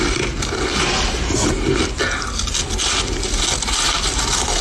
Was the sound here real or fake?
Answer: real